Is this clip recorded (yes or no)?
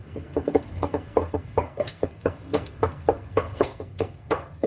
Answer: no